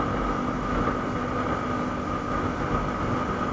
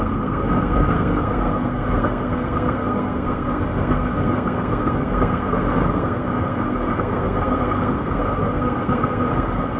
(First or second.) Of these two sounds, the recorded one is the first